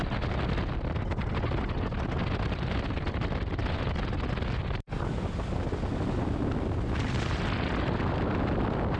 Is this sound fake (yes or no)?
no